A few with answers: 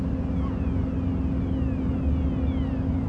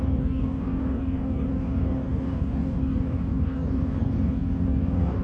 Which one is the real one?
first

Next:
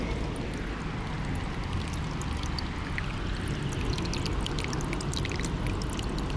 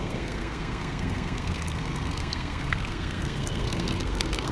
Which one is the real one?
first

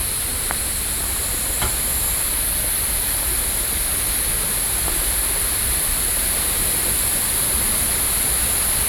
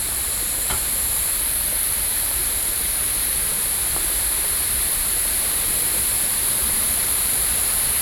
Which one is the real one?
first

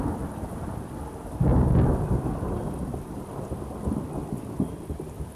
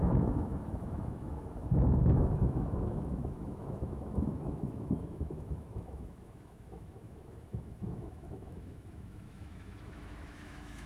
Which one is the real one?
first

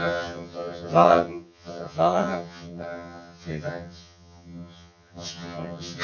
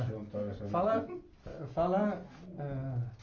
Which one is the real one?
second